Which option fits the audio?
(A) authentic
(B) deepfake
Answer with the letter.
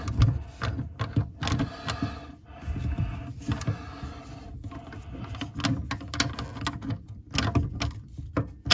A